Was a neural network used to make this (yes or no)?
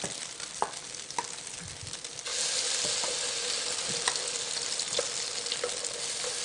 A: no